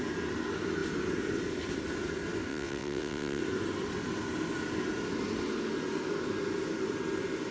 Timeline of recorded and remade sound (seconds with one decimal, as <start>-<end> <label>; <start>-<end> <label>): 0.0-2.5 recorded; 2.5-3.4 remade; 3.4-7.5 recorded